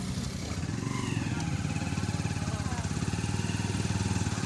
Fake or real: real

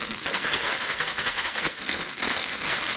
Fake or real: fake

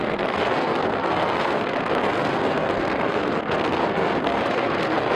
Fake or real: fake